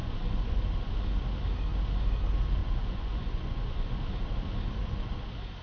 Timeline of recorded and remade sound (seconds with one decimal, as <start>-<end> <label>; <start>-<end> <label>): 0.0-0.6 remade; 0.6-2.6 recorded; 2.6-3.9 remade; 3.9-5.6 recorded